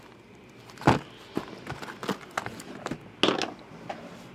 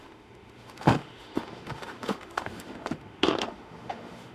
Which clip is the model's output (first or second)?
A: second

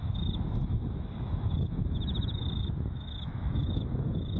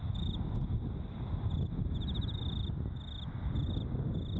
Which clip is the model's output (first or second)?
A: first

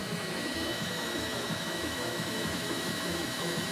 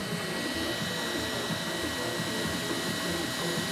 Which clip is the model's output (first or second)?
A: first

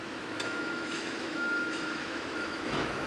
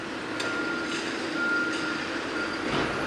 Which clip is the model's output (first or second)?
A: first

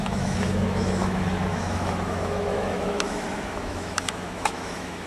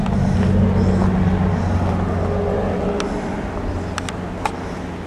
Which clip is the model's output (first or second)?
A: first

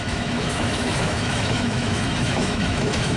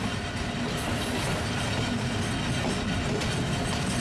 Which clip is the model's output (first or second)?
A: first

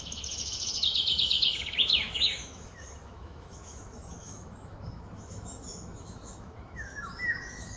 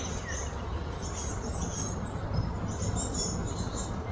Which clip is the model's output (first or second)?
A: first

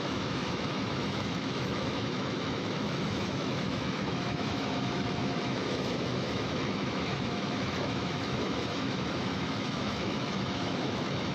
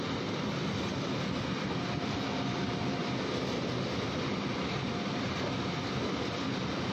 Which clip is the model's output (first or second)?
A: first